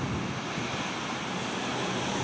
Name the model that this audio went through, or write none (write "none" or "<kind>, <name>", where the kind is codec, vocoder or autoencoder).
none